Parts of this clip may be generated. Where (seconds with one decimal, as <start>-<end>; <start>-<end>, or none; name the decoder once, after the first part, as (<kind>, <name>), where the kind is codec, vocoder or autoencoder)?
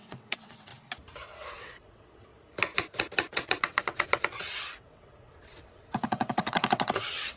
0.0-0.7 (vocoder, WaveNeXt); 1.5-2.3; 3.3-7.4